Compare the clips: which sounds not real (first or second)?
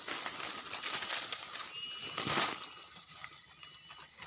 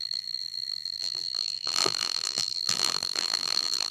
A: second